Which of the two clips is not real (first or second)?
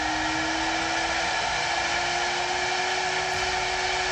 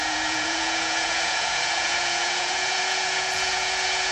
second